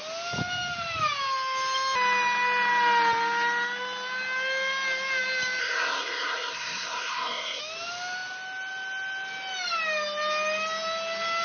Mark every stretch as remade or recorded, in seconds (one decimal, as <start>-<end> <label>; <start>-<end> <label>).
0.0-5.6 recorded; 5.6-7.6 remade; 7.6-11.4 recorded